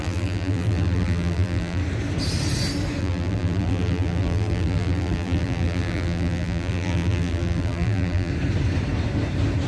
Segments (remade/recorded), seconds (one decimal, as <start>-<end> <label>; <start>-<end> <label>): 0.0-1.8 remade; 1.8-3.0 recorded; 3.0-8.3 remade; 8.3-9.7 recorded